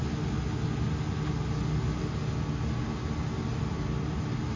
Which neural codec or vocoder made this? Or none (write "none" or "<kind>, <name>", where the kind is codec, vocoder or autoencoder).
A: none